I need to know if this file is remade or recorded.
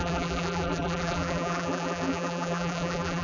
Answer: remade